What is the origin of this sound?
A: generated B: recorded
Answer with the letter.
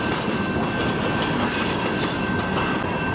B